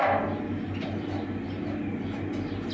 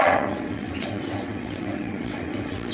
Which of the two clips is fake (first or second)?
second